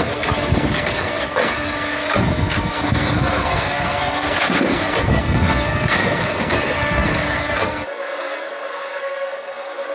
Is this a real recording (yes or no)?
no